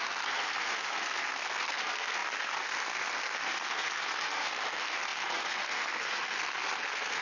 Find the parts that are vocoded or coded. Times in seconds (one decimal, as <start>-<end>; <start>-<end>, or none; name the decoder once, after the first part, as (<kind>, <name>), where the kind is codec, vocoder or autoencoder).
0.0-7.2 (codec, SNAC)